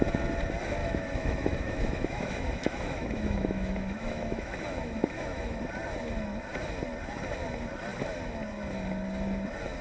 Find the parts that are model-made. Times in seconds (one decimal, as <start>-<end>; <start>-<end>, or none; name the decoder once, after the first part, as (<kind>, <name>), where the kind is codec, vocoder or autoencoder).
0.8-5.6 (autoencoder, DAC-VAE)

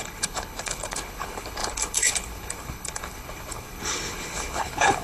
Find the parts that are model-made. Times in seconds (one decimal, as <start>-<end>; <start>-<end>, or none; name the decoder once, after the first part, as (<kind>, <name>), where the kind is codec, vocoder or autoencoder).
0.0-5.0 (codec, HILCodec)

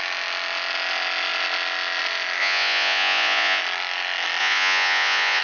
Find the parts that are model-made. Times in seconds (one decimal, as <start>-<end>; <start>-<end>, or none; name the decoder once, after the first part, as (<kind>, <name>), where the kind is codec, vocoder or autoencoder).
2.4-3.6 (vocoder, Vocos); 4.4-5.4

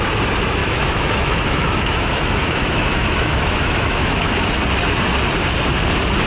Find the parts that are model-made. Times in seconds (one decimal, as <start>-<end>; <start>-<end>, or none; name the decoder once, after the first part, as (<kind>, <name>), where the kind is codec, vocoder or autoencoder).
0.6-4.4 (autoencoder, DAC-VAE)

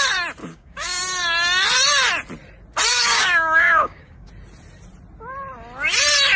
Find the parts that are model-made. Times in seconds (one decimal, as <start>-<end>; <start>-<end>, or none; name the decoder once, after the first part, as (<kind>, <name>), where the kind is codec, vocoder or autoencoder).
0.4-1.0 (codec, DAC); 2.9-4.3

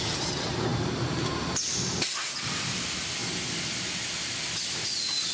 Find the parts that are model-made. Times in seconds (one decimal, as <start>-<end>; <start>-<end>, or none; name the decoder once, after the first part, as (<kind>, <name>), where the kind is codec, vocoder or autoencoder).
none

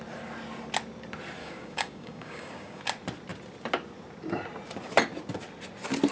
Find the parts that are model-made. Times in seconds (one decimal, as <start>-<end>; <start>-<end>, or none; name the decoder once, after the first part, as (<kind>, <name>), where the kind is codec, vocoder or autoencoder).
1.4-2.8 (codec, DAC)